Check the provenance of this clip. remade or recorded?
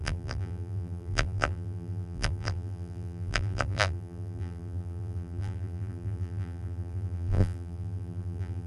remade